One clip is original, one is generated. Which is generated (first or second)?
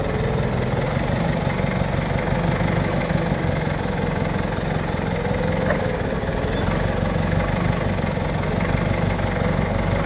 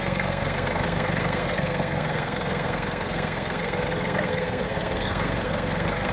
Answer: second